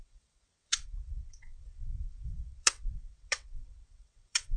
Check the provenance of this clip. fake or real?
fake